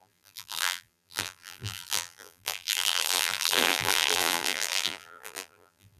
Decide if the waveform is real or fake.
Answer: fake